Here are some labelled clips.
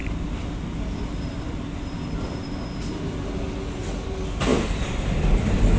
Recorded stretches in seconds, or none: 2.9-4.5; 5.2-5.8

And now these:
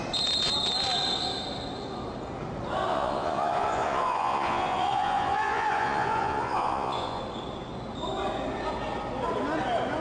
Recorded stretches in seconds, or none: 0.0-2.9; 7.2-10.0

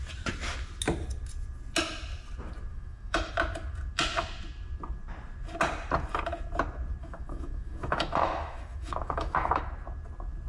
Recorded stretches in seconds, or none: 0.0-2.7; 3.3-7.0; 9.6-10.5

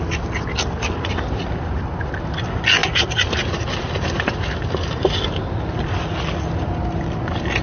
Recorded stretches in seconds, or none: 0.0-7.6

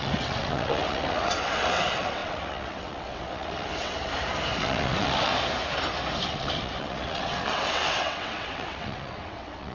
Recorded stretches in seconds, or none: 4.1-4.6; 5.3-6.3